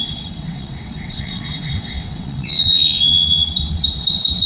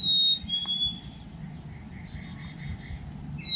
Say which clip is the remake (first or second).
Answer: first